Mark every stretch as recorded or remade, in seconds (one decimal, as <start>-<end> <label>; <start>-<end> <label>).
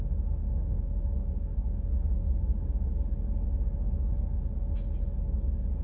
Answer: 0.0-0.4 recorded; 0.4-3.0 remade; 3.0-5.8 recorded